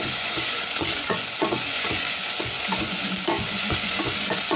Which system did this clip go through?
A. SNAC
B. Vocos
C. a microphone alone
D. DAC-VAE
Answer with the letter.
B